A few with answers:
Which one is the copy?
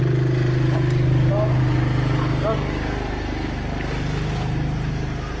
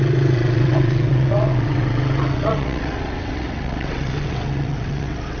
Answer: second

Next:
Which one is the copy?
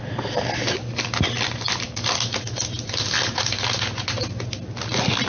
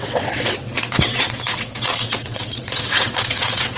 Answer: second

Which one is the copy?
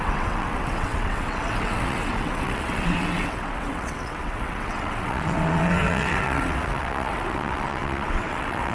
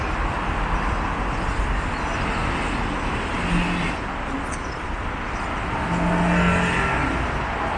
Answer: first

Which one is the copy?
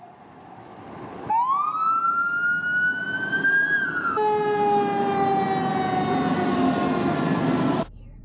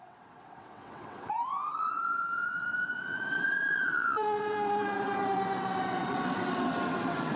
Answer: second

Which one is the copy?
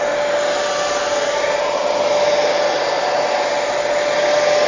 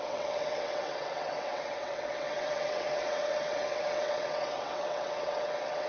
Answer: second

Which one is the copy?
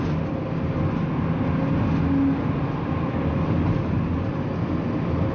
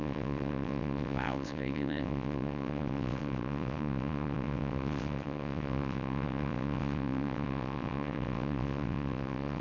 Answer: second